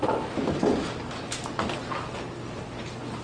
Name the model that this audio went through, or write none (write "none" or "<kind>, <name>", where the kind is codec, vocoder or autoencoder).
none